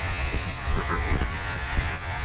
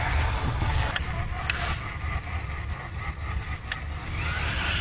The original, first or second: second